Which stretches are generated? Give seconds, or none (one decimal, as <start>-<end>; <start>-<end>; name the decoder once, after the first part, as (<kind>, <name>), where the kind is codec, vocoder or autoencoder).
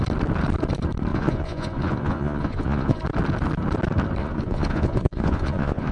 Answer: 1.1-3.0 (vocoder, Vocos); 4.2-5.9